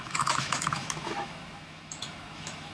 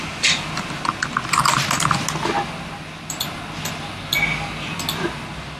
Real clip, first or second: second